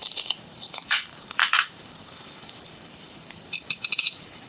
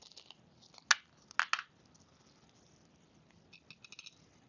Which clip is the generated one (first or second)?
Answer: first